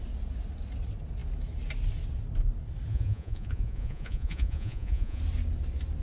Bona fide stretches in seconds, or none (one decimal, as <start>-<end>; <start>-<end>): 0.0-2.9; 5.2-6.0